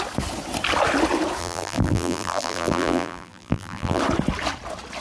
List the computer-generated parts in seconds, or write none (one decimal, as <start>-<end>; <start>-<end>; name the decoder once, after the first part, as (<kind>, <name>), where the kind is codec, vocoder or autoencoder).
1.4-4.0 (vocoder, BigVGAN v2)